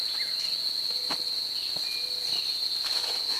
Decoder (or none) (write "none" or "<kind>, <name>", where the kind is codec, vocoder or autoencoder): none